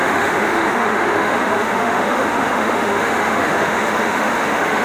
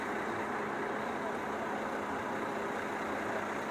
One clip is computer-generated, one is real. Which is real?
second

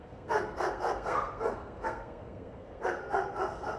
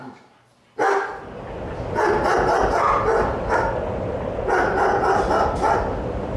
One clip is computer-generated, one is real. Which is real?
second